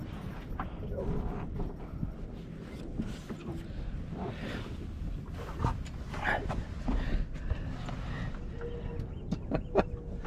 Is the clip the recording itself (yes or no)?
yes